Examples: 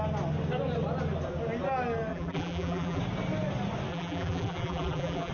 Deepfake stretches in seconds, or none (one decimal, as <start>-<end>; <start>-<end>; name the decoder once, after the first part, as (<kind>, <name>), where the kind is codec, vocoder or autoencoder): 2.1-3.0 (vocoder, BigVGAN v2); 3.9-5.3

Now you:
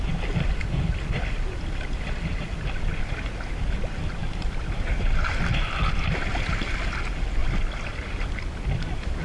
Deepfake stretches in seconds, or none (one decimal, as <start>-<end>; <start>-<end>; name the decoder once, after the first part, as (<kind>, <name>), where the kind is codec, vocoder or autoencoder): none

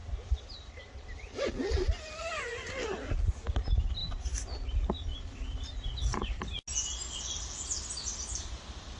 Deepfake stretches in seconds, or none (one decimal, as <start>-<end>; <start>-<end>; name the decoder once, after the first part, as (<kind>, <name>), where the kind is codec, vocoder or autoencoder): 0.0-1.5 (vocoder, BigVGAN v2); 8.1-9.0